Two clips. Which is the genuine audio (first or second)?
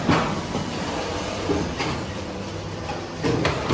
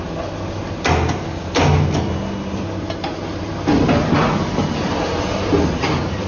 second